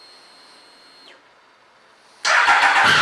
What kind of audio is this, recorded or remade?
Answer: recorded